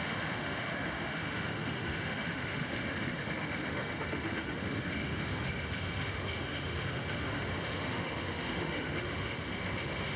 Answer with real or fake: fake